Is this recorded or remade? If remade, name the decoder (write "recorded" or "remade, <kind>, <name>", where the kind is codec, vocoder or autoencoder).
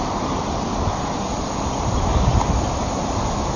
recorded